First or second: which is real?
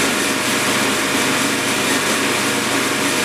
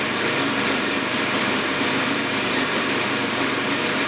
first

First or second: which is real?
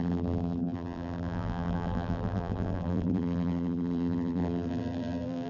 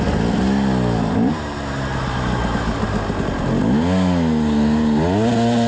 second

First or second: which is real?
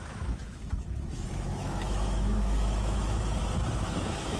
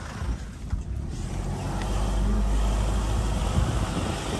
second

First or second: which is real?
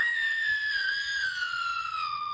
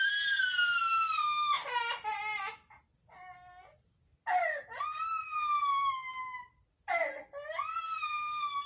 second